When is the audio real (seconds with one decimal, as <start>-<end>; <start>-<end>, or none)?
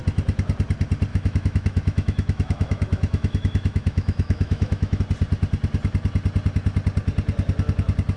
0.0-1.1; 5.0-8.2